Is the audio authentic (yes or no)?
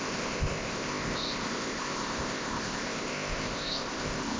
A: no